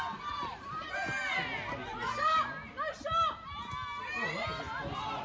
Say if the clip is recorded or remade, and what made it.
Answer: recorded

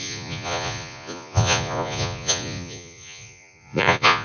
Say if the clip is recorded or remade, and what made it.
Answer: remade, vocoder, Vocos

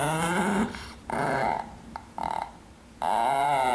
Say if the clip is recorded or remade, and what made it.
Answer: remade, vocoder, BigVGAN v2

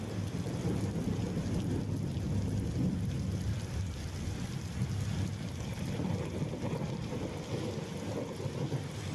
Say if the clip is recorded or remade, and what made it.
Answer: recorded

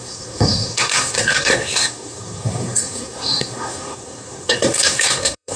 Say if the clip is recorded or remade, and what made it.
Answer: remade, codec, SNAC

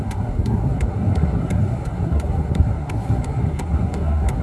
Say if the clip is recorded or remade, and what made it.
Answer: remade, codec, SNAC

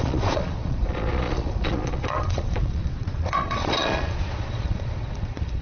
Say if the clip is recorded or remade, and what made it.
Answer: remade, vocoder, Vocos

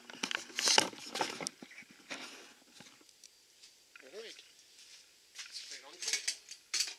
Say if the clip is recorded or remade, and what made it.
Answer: recorded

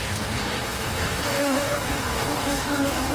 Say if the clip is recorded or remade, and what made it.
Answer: remade, codec, DAC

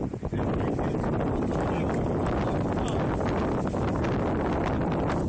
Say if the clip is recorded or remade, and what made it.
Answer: recorded